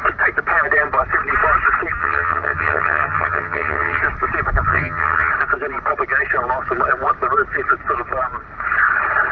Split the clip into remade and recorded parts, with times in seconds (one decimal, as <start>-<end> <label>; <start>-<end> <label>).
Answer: 0.0-2.0 recorded; 2.0-4.0 remade; 4.0-4.7 recorded; 4.7-5.3 remade; 5.3-9.3 recorded